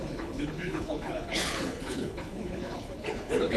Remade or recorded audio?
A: remade